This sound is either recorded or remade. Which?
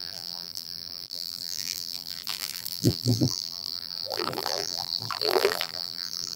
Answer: remade